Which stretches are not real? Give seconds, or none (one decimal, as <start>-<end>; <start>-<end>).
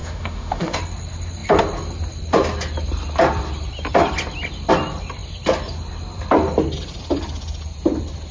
0.0-0.8